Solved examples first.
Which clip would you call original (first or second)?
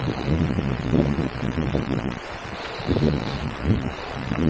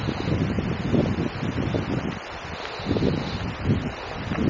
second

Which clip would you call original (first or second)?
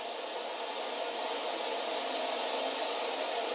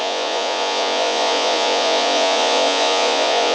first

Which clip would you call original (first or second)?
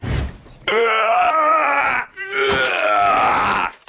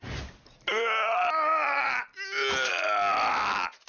second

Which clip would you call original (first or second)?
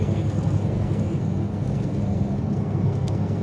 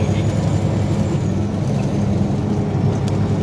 second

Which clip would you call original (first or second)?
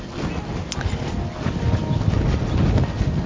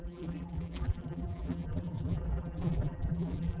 first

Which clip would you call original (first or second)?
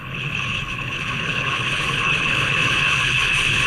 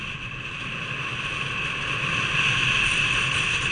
second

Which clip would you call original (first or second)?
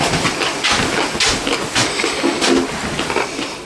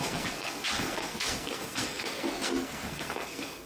first